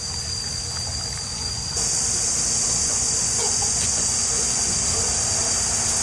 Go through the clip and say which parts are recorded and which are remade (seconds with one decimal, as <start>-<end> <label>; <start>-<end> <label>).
0.0-1.3 recorded; 1.3-1.8 remade; 1.8-2.8 recorded; 2.8-4.7 remade; 4.7-6.0 recorded

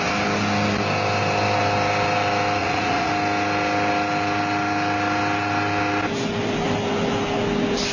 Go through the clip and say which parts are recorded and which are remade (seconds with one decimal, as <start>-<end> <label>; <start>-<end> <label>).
0.0-2.6 recorded; 2.6-3.1 remade; 3.1-7.9 recorded